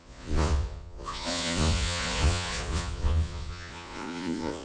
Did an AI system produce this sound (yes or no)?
yes